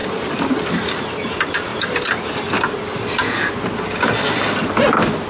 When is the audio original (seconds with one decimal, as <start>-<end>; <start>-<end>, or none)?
1.1-1.7; 2.3-5.3